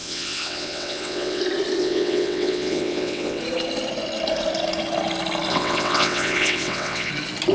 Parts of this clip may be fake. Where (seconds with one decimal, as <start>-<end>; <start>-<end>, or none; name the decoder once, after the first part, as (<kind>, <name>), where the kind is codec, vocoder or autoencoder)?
0.0-1.4 (vocoder, WaveNeXt); 1.8-3.4; 5.5-7.1